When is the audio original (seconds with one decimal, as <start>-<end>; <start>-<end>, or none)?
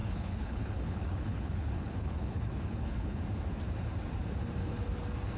3.2-5.4